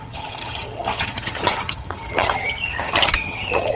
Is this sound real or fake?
fake